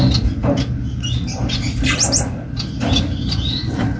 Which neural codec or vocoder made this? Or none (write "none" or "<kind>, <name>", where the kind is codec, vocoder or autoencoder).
none